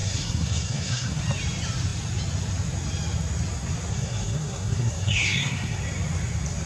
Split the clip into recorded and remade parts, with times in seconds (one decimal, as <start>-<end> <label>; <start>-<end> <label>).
0.0-1.2 remade; 1.2-3.9 recorded; 3.9-5.8 remade; 5.8-6.7 recorded